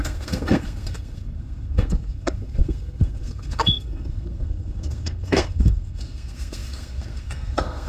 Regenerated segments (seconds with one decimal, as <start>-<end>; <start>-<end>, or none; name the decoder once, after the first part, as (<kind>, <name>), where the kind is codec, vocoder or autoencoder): 0.0-7.9 (codec, SNAC)